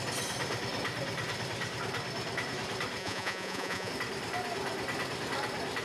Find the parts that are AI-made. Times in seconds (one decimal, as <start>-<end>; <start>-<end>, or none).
3.0-3.9